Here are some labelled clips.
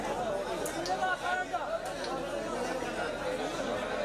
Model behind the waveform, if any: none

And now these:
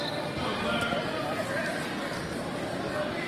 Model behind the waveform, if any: none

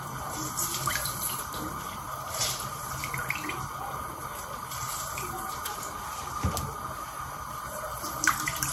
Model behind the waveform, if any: vocoder, BigVGAN v2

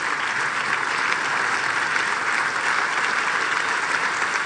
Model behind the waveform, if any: none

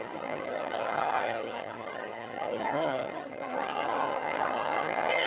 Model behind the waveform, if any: vocoder, HiFi-GAN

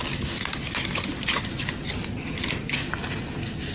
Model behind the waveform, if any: none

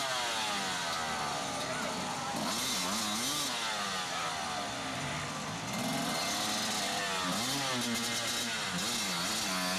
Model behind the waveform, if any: none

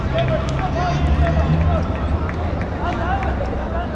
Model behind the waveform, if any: none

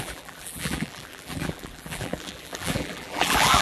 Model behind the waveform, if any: vocoder, BigVGAN v2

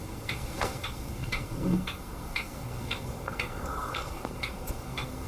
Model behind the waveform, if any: codec, SNAC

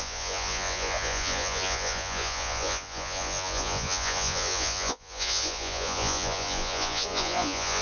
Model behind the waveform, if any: vocoder, Vocos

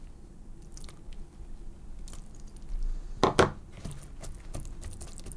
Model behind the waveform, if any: none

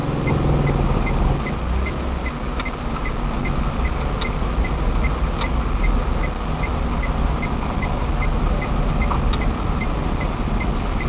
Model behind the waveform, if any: none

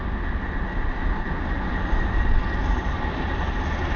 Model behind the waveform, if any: none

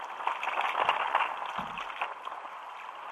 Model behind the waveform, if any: none